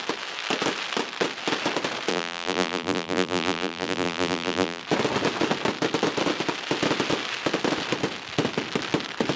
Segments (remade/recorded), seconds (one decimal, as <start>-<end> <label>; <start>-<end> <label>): 0.0-2.1 recorded; 2.1-4.8 remade; 4.8-9.4 recorded